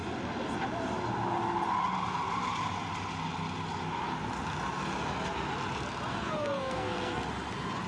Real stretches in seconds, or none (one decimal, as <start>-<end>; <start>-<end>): 0.0-6.1; 7.2-7.9

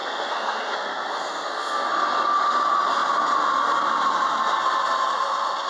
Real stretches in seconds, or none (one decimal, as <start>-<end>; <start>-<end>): 1.9-5.7

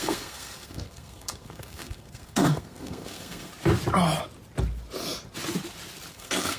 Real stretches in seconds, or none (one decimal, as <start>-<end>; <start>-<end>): 3.5-6.1

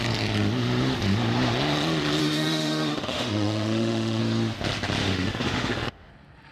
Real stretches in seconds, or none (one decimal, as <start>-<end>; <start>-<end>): 0.0-2.2; 4.2-5.0; 6.1-6.5